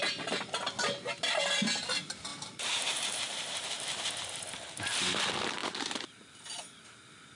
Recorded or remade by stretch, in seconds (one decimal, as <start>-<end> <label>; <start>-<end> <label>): 0.0-2.3 recorded; 2.3-4.1 remade; 4.1-7.4 recorded